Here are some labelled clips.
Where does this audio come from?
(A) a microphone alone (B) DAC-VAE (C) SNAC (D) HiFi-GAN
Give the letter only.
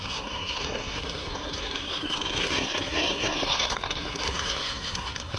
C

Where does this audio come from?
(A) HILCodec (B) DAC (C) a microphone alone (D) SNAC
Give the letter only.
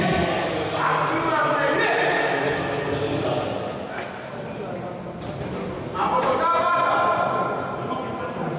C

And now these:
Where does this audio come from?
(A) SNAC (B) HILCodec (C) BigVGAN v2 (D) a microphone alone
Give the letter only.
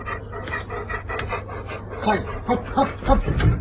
D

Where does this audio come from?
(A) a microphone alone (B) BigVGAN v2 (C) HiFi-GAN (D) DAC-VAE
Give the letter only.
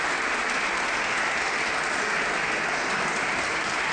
A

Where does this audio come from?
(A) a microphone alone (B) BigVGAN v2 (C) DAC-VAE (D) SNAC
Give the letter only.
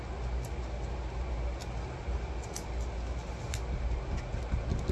A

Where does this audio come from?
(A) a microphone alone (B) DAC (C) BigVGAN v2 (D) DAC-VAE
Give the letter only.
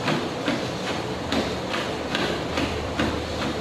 C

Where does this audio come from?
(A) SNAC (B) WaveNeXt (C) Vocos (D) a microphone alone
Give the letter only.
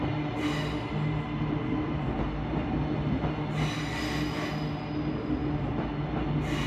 D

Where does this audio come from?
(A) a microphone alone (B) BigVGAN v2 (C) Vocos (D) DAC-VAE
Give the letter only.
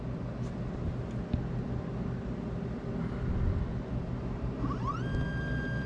A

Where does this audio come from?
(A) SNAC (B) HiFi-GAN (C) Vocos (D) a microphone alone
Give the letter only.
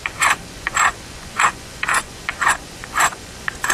C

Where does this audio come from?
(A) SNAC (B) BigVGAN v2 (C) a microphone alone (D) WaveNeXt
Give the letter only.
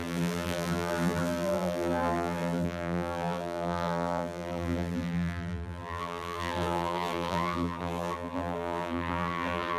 B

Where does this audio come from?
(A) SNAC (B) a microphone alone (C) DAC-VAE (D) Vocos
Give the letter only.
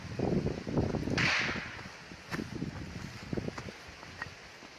B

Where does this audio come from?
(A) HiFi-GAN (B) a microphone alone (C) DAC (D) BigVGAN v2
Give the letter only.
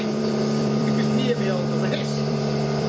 D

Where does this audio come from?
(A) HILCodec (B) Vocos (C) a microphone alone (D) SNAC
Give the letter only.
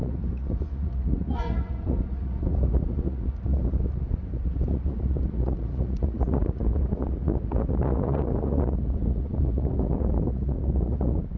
B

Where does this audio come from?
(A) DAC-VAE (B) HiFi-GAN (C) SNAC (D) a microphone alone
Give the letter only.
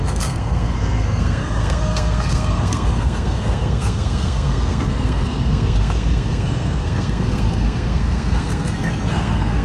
C